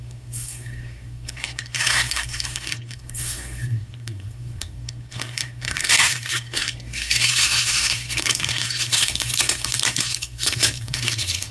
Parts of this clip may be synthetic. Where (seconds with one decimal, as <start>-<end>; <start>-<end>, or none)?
0.0-11.5